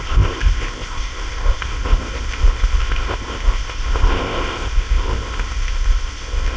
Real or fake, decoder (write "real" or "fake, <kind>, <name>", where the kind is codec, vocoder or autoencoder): fake, codec, ZipCodec